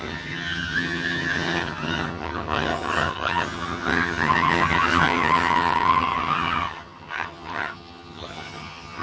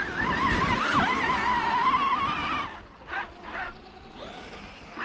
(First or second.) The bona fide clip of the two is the second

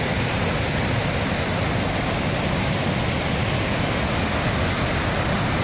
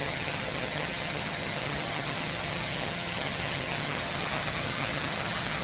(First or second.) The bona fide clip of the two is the first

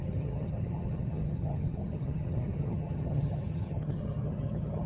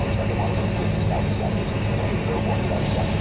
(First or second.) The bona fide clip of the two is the second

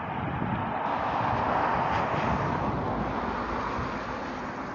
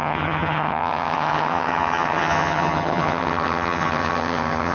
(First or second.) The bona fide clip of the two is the first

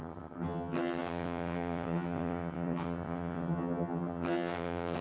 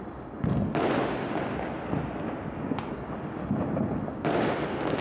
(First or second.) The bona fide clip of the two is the second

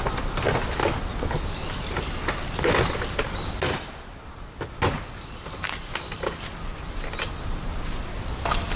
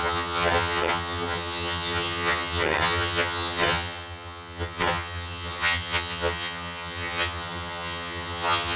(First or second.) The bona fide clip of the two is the first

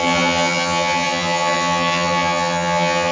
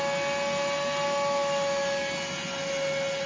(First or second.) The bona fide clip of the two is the second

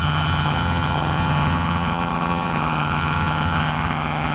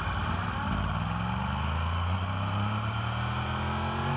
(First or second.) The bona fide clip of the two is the second